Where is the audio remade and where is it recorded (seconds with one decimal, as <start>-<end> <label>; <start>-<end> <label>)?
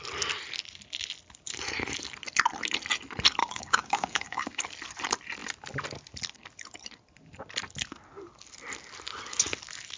0.0-3.4 recorded; 3.4-4.6 remade; 4.6-10.0 recorded